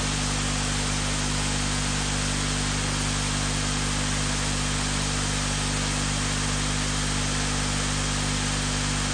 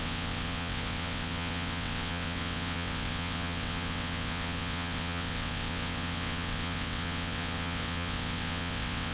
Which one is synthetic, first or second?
second